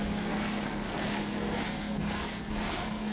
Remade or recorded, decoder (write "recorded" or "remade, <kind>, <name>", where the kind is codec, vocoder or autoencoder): remade, codec, SNAC